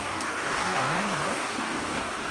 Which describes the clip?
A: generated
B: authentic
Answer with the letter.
A